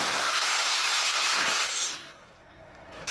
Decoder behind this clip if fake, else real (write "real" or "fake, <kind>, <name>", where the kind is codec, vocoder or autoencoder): fake, codec, SNAC